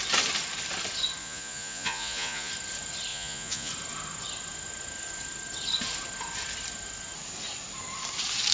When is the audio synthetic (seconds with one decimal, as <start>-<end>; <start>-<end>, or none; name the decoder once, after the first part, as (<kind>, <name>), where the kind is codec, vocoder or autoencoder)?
1.2-2.5 (vocoder, Vocos); 3.1-3.7